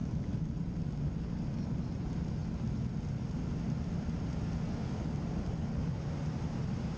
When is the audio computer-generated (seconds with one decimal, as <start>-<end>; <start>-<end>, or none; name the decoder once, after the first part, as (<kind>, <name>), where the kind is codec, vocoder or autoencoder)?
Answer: 5.6-6.1 (codec, HILCodec)